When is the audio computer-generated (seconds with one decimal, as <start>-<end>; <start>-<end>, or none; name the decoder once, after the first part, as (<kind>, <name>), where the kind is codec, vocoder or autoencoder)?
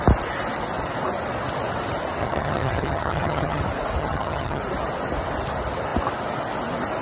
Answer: 2.2-3.6 (vocoder, HiFi-GAN); 4.0-4.6